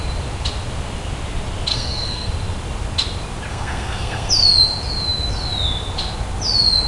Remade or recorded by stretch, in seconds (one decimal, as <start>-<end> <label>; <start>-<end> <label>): 0.0-1.7 recorded; 1.7-2.3 remade; 2.3-3.5 recorded; 3.5-4.3 remade; 4.3-6.9 recorded